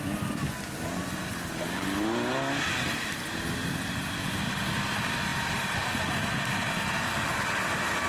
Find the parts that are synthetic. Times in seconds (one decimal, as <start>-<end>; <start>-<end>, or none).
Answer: none